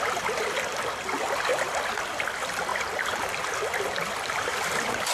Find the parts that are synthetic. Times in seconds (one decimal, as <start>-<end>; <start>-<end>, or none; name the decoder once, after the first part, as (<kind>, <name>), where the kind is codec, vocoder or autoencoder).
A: none